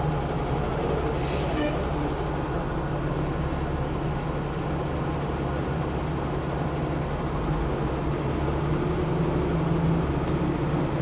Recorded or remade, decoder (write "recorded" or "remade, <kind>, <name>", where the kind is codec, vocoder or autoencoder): recorded